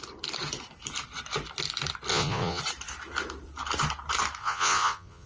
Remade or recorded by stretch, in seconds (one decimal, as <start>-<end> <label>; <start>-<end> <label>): 0.0-2.1 recorded; 2.1-2.6 remade; 2.6-4.4 recorded; 4.4-5.3 remade